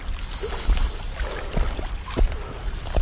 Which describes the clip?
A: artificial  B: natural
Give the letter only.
B